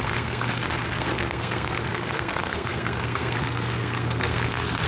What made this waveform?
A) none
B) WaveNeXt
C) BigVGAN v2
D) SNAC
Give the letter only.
D